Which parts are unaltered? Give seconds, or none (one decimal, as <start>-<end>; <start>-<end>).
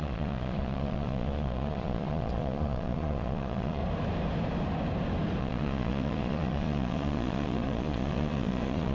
3.8-5.4